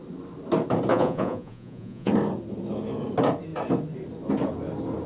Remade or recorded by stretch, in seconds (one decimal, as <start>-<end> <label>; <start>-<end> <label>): 0.0-0.9 recorded; 0.9-2.1 remade; 2.1-5.1 recorded